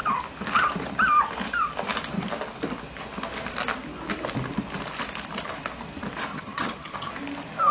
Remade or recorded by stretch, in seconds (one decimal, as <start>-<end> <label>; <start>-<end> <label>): 0.0-6.3 recorded; 6.3-7.1 remade; 7.1-7.7 recorded